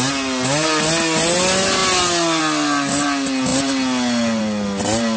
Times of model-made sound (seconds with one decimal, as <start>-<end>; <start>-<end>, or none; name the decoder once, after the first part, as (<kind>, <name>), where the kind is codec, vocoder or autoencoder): none